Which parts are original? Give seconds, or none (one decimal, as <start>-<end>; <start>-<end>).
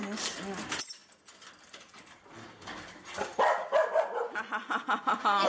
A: 0.0-5.5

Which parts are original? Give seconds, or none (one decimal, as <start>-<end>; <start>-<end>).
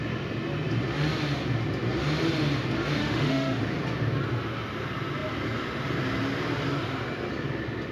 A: 0.0-3.0; 3.6-7.9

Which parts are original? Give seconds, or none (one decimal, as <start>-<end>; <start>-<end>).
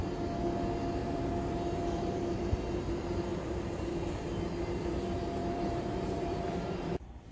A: 0.0-1.0; 2.9-3.3; 3.9-5.4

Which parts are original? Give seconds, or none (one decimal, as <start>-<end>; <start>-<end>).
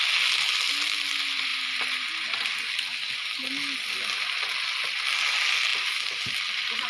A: 0.0-6.9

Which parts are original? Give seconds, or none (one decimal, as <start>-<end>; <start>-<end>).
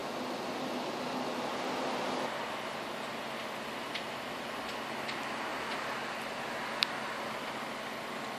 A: 0.0-8.4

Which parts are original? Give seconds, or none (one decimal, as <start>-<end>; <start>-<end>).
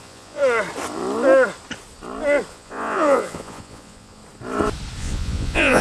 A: 0.4-2.5; 4.2-5.0